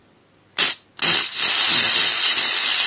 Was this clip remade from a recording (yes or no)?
no